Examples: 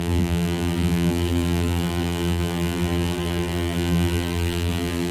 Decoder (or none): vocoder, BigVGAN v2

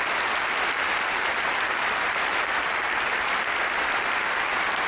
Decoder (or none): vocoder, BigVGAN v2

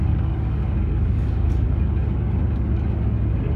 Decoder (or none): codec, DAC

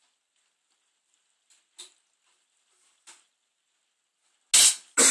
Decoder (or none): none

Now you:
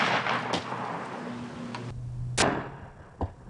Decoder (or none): none